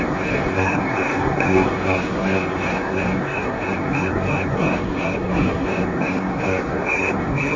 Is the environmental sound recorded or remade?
remade